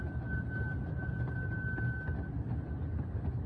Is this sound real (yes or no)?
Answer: yes